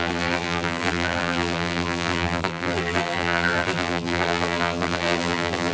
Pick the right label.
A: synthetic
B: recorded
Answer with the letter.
A